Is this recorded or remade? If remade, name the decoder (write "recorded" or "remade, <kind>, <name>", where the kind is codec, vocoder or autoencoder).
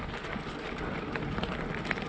recorded